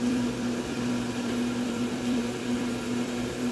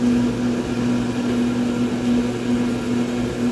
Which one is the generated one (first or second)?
first